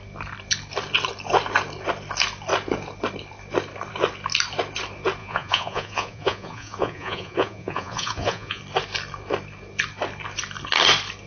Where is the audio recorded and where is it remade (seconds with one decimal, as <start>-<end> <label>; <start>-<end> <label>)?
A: 0.0-5.2 recorded; 5.2-8.6 remade; 8.6-11.3 recorded